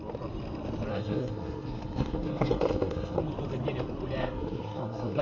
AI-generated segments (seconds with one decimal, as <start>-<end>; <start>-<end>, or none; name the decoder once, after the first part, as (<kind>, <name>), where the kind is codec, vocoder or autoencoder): 0.9-3.2 (codec, SNAC); 4.2-5.2